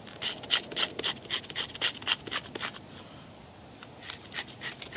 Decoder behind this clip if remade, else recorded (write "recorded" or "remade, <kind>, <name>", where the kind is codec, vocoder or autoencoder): recorded